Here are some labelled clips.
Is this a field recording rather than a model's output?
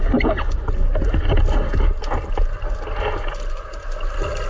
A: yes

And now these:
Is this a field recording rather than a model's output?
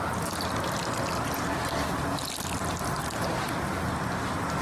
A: yes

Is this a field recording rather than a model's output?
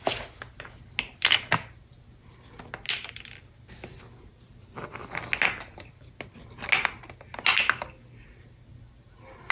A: yes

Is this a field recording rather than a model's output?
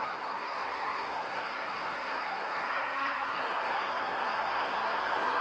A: no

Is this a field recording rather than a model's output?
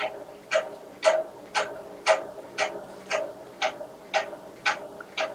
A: yes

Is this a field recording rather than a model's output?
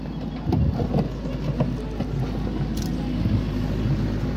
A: yes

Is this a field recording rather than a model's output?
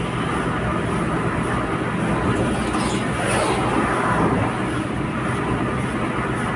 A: yes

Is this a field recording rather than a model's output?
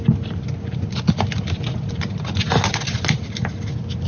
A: yes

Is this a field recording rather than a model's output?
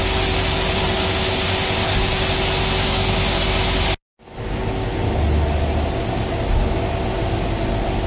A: yes